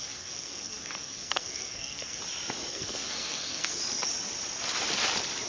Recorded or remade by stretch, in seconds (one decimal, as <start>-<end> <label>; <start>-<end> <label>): 0.0-2.2 remade; 2.2-2.7 recorded; 2.7-3.8 remade; 3.8-5.5 recorded